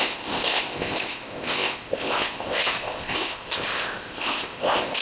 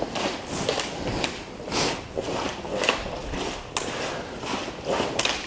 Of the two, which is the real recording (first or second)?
second